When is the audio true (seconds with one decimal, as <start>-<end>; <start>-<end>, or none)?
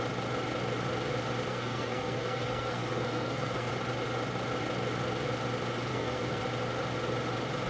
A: 0.0-1.5; 3.7-5.9; 6.4-7.7